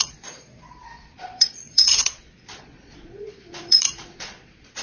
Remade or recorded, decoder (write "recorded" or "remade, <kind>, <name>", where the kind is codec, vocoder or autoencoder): remade, vocoder, Vocos